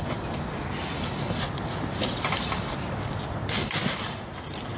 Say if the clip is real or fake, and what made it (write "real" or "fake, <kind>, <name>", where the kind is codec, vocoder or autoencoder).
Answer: real